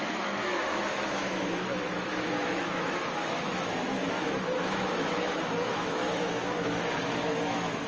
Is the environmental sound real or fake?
fake